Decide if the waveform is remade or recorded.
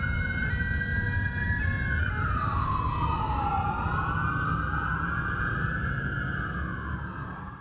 recorded